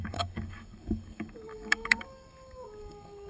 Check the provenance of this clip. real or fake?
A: fake